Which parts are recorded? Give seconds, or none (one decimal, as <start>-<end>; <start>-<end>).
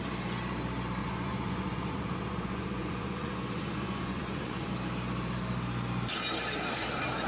0.0-1.0; 4.7-7.3